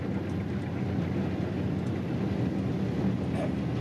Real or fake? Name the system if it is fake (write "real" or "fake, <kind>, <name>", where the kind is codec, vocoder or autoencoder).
real